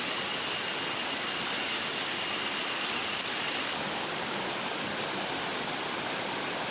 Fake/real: real